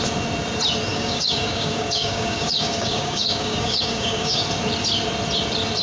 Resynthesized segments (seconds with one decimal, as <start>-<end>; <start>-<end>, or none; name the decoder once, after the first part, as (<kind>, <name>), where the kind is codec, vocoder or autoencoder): 0.9-4.4 (codec, DAC)